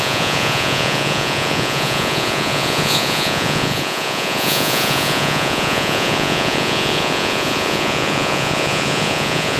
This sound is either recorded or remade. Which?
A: remade